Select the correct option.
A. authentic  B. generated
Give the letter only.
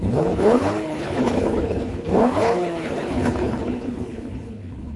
B